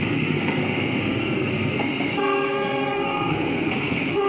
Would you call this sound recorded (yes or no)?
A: no